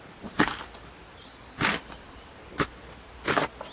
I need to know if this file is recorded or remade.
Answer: recorded